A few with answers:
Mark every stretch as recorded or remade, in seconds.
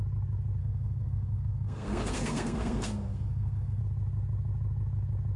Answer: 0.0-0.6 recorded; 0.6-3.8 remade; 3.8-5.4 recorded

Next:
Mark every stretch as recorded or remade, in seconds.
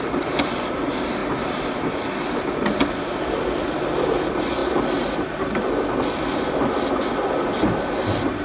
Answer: 0.0-8.4 recorded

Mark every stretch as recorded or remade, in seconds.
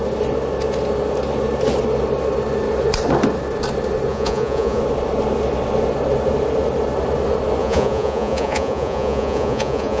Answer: 0.0-4.1 recorded; 4.1-4.8 remade; 4.8-7.6 recorded; 7.6-10.0 remade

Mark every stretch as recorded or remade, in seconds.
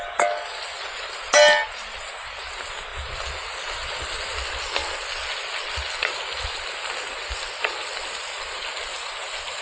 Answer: 0.0-8.9 recorded; 8.9-9.6 remade